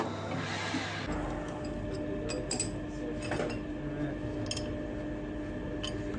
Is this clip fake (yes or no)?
no